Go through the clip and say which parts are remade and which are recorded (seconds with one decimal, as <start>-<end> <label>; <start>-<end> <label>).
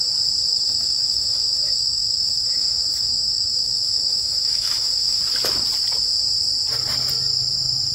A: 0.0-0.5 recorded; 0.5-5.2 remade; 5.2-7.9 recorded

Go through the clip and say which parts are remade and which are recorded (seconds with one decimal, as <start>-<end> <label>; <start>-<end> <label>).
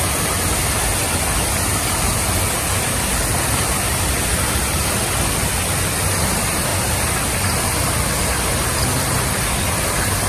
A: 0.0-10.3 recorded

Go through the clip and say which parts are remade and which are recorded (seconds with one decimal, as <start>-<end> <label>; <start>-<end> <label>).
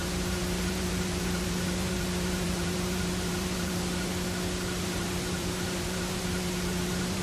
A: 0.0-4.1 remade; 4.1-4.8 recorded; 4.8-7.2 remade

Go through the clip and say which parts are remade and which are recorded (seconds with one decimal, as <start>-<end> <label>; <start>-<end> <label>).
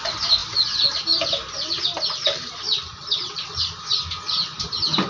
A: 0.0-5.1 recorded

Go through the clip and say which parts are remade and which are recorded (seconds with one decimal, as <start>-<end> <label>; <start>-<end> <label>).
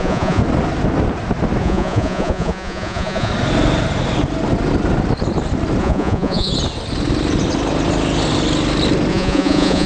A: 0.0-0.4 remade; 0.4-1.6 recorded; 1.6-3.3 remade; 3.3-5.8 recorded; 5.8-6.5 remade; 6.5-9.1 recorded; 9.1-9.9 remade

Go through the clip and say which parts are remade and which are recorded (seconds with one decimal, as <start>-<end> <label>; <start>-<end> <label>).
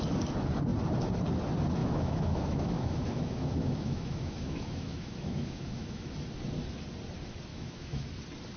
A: 0.0-1.8 recorded; 1.8-6.1 remade; 6.1-7.5 recorded; 7.5-8.1 remade; 8.1-8.6 recorded